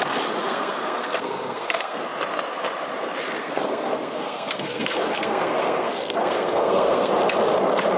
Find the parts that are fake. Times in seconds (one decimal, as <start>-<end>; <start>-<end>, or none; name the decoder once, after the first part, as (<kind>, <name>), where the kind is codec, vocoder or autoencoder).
0.4-2.0 (codec, SNAC); 3.4-7.1